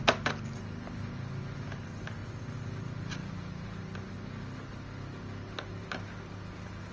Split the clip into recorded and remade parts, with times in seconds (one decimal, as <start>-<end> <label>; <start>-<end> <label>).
0.0-3.2 recorded; 3.2-3.8 remade; 3.8-6.9 recorded